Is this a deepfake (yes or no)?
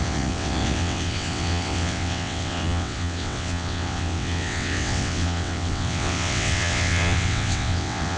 yes